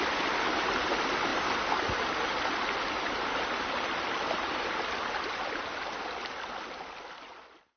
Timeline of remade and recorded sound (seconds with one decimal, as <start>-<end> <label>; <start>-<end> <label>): 0.0-1.3 recorded; 1.3-6.0 remade; 6.0-7.8 recorded